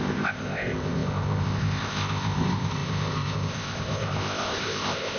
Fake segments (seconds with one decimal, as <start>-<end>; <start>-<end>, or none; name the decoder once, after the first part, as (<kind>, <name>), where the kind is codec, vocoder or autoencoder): 0.0-5.2 (codec, ZipCodec)